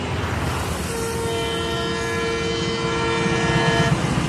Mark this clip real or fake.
real